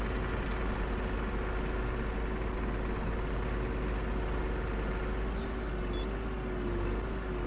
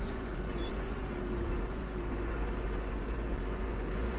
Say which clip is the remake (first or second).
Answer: second